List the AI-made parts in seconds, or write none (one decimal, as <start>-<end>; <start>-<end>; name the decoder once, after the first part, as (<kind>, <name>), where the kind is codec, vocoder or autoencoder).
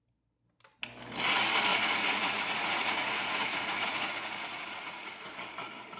1.7-5.3 (vocoder, Vocos)